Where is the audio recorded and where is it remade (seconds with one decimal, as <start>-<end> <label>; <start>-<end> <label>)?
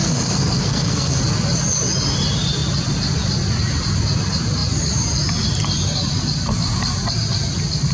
0.0-1.2 remade; 1.2-7.9 recorded